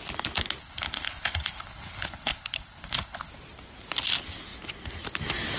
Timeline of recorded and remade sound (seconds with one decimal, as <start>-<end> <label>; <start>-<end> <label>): 0.0-0.6 recorded; 0.6-3.3 remade; 3.3-5.6 recorded